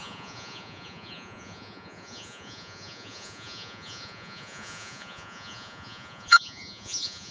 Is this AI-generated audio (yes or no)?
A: yes